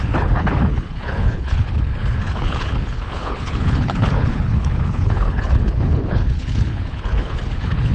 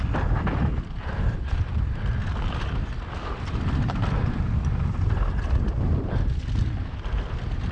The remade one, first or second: first